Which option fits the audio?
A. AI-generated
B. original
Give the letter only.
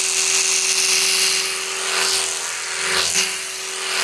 B